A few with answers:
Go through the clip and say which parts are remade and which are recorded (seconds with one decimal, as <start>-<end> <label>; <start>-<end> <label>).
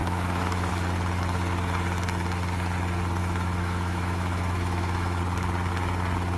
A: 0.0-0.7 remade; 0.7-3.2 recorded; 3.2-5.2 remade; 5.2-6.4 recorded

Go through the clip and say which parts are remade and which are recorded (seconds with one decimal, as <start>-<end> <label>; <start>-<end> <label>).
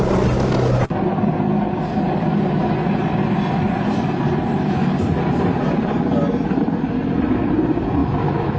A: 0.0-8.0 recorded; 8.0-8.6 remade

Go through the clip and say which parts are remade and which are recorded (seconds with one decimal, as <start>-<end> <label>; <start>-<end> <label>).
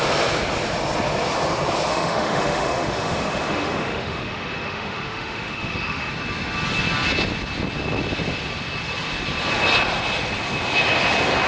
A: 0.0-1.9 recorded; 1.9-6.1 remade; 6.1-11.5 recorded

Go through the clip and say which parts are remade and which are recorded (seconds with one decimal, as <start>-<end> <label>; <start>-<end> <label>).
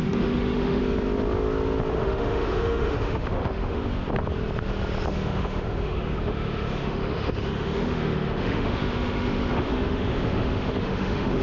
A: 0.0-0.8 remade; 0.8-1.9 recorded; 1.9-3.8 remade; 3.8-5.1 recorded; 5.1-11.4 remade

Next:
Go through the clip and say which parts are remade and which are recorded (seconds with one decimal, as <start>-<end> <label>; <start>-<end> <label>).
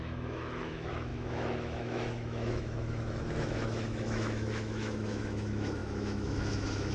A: 0.0-6.9 remade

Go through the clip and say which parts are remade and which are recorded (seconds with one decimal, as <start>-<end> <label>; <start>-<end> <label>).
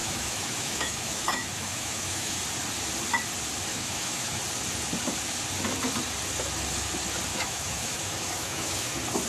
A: 0.0-2.4 remade; 2.4-3.7 recorded; 3.7-4.4 remade; 4.4-7.3 recorded; 7.3-8.9 remade; 8.9-9.3 recorded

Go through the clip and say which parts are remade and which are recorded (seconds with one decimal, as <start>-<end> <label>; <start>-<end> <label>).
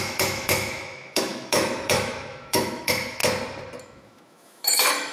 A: 0.0-3.2 remade; 3.2-3.8 recorded; 3.8-5.1 remade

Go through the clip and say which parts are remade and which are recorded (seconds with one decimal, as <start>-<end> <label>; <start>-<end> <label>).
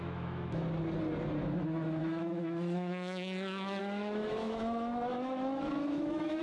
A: 0.0-0.6 remade; 0.6-1.4 recorded; 1.4-6.4 remade